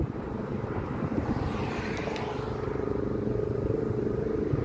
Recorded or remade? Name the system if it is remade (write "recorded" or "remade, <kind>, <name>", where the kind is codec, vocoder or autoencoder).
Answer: remade, vocoder, BigVGAN v2